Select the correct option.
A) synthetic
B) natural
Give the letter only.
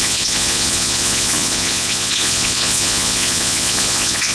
A